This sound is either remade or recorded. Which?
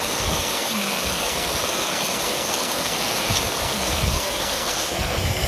remade